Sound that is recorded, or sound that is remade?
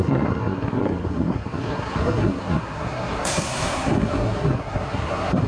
remade